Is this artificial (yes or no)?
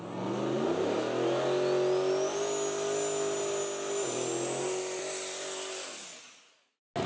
no